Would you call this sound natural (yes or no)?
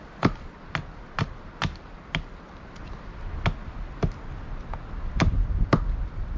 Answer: yes